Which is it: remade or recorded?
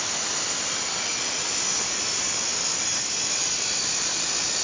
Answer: recorded